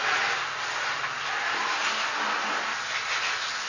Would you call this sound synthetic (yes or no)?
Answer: no